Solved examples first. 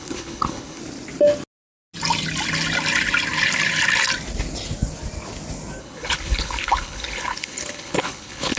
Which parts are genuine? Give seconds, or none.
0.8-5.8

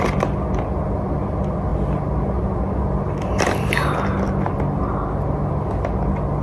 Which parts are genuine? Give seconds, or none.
0.0-6.4

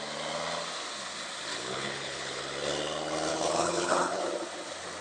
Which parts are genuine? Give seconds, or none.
0.0-1.5; 2.4-3.3; 4.2-5.0

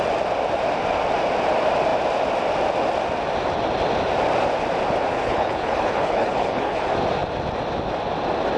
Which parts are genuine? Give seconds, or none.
0.0-5.1; 6.8-8.6

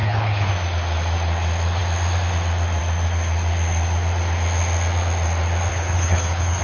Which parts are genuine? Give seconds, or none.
0.5-5.7

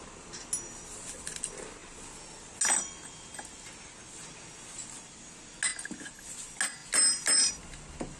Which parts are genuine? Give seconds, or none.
0.0-8.2